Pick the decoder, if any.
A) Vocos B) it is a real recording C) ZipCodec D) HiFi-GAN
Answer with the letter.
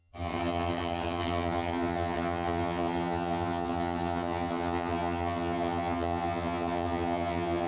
D